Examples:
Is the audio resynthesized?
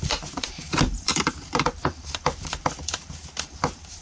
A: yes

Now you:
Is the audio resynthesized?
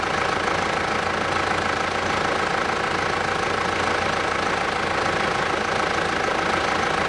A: no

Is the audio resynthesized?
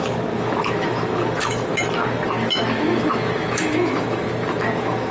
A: yes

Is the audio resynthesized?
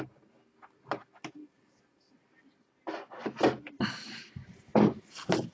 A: no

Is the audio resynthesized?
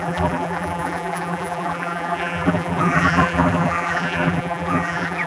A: yes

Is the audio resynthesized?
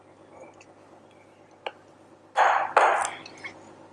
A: no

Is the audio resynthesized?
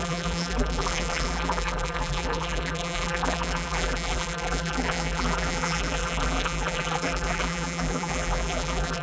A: yes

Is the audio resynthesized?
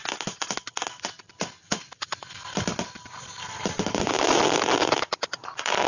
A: no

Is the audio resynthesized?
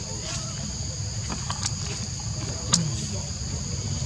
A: no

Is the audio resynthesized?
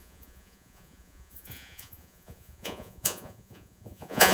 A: yes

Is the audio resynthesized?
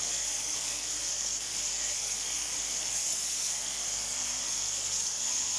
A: yes